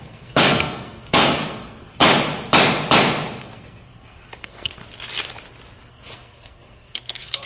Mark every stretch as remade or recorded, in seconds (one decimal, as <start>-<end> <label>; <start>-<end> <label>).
0.0-2.0 remade; 2.0-3.4 recorded; 3.4-4.8 remade; 4.8-5.9 recorded; 5.9-7.5 remade